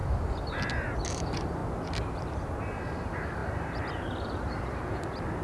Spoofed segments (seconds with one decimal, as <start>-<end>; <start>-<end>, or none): 1.1-1.6; 2.2-5.4